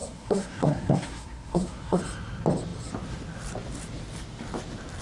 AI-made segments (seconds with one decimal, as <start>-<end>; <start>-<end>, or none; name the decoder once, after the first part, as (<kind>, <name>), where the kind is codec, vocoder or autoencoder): 0.0-2.0 (codec, SNAC)